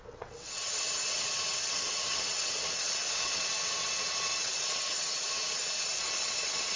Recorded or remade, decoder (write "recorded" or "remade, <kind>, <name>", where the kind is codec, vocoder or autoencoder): remade, vocoder, WaveNeXt